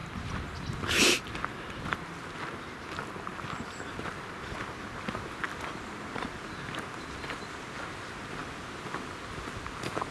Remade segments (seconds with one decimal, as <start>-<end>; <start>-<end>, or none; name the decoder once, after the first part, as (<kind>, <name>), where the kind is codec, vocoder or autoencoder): none